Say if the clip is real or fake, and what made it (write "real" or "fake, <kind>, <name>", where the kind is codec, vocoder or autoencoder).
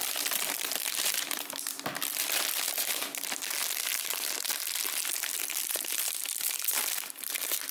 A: fake, vocoder, BigVGAN v2